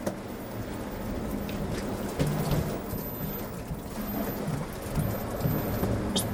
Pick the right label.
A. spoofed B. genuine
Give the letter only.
B